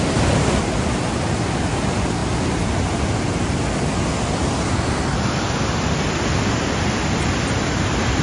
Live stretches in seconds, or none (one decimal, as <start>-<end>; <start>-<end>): 0.0-8.2